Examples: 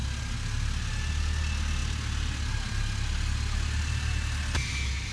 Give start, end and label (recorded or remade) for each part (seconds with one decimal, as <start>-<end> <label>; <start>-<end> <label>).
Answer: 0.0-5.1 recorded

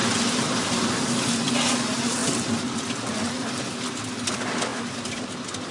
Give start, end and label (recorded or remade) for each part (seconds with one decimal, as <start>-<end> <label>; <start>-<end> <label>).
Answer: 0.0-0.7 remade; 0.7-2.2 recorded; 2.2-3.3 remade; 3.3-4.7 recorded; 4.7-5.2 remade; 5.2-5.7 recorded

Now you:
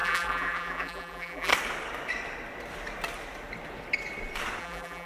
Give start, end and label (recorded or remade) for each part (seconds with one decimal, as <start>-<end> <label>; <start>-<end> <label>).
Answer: 0.0-1.5 remade; 1.5-4.6 recorded; 4.6-5.1 remade